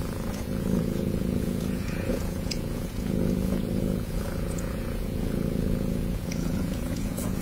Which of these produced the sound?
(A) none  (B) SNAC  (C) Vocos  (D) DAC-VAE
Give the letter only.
C